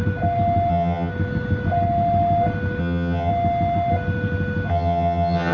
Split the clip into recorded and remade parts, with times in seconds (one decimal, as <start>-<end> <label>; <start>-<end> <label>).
0.0-0.7 recorded; 0.7-1.1 remade; 1.1-2.8 recorded; 2.8-3.3 remade; 3.3-4.7 recorded; 4.7-5.5 remade